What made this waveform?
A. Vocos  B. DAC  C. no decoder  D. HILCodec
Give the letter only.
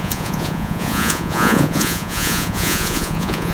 A